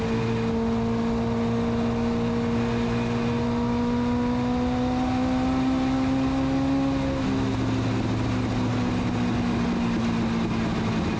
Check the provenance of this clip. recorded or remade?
recorded